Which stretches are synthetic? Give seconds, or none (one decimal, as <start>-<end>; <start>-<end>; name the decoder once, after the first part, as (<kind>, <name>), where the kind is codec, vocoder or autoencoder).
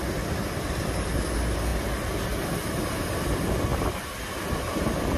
0.0-5.2 (vocoder, BigVGAN v2)